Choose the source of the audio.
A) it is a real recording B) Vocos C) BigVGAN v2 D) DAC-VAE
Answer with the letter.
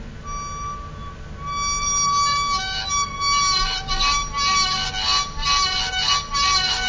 A